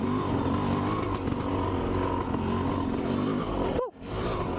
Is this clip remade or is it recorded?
recorded